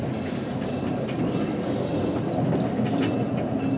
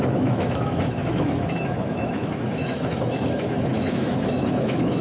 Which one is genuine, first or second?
first